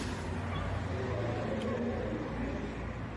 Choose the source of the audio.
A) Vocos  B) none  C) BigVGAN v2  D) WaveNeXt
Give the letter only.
B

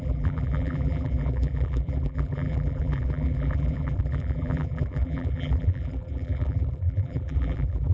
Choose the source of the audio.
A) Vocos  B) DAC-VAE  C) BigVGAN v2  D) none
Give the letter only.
C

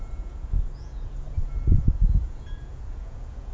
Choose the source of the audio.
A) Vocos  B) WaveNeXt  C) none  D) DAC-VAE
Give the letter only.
A